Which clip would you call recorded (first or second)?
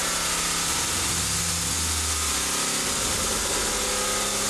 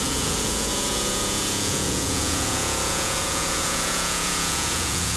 first